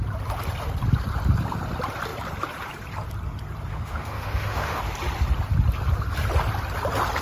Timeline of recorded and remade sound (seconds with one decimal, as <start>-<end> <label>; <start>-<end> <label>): 0.0-3.7 recorded; 3.7-4.8 remade; 4.8-7.2 recorded